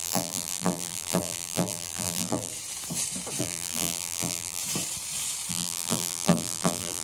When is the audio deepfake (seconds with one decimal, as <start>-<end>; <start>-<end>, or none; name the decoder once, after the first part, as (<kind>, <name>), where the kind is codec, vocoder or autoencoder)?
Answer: 0.0-2.5 (vocoder, BigVGAN v2); 3.4-4.6; 5.5-7.0